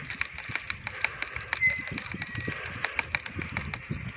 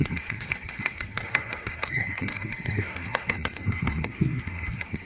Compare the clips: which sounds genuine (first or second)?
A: first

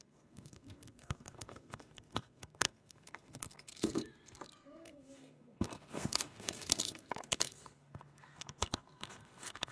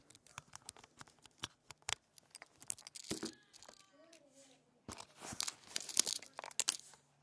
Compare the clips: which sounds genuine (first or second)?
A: second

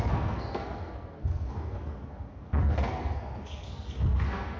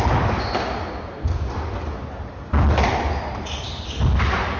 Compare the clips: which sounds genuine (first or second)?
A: second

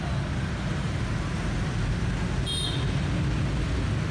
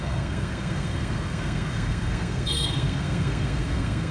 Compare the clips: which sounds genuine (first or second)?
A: first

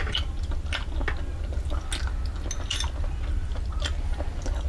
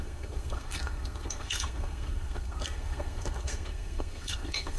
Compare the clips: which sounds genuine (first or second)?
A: first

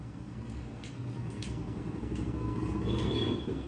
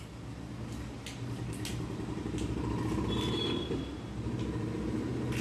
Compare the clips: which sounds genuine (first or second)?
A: second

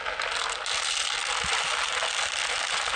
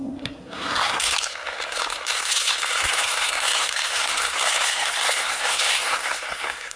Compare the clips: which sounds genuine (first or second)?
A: first